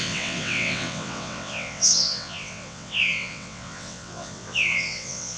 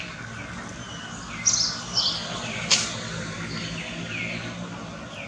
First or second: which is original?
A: second